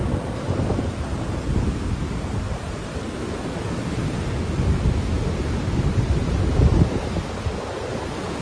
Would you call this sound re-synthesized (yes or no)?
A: no